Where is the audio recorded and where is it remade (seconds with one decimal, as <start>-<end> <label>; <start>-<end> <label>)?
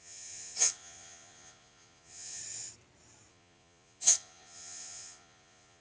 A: 0.0-2.4 remade; 2.4-3.3 recorded; 3.3-5.8 remade